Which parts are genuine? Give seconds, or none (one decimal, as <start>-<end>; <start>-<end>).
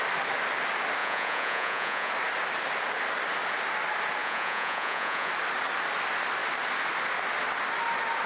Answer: 0.0-1.0; 2.1-4.2; 5.3-8.3